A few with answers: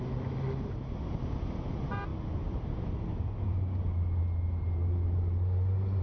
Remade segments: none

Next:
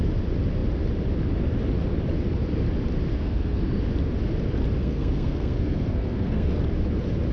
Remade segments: 3.1-3.8 (codec, SNAC); 4.8-6.6

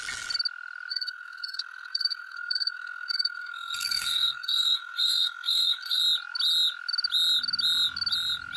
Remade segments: 0.9-6.0 (codec, SNAC)

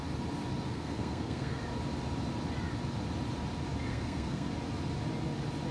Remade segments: 0.7-1.6 (codec, SNAC); 3.9-4.5